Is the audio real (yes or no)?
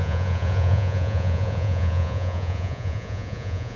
no